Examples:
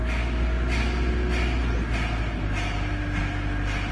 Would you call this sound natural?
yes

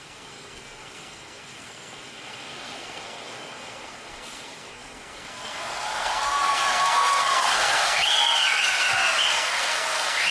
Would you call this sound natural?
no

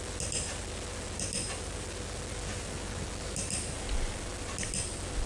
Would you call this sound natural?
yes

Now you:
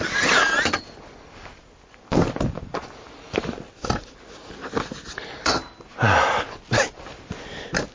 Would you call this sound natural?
yes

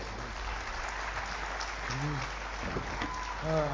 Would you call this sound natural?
yes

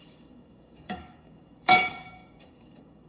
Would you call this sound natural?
no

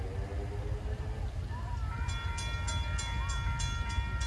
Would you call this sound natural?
yes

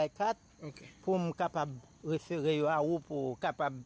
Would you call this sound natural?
yes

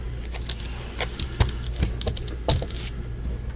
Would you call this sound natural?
yes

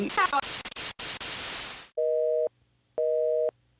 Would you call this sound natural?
yes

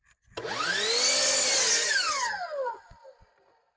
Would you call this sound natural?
yes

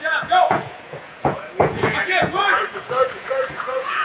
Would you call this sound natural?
no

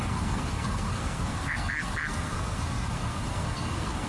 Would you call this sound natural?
no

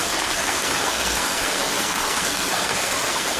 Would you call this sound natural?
no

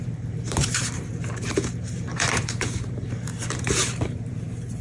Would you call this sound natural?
no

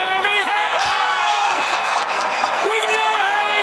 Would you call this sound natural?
no